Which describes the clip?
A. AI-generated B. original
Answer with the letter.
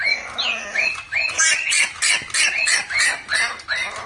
B